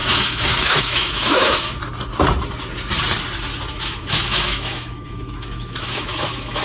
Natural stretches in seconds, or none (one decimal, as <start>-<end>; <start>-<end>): 1.8-3.7